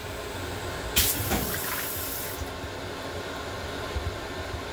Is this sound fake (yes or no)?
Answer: no